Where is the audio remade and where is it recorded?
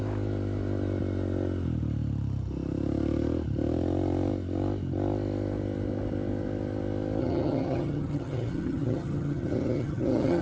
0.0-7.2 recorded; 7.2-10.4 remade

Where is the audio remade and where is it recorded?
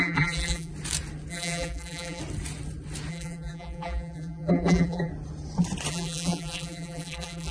0.0-0.7 remade; 0.7-1.3 recorded; 1.3-2.2 remade; 2.2-3.1 recorded; 3.1-5.1 remade; 5.1-5.9 recorded; 5.9-7.5 remade